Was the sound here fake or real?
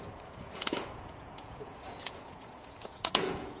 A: fake